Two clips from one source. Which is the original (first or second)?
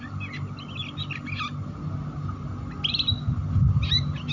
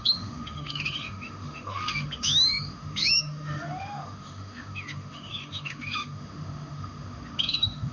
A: first